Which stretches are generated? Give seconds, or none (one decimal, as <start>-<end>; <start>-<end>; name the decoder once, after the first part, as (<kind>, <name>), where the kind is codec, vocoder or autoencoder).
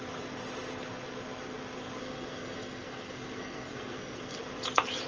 2.0-4.4 (codec, SNAC)